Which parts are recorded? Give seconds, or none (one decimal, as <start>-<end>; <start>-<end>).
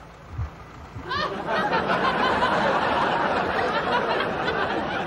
0.0-1.6; 4.0-5.1